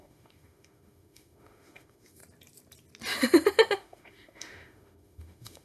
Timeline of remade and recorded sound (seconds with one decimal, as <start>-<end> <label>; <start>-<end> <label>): 0.0-2.2 remade; 2.2-3.7 recorded; 3.7-5.6 remade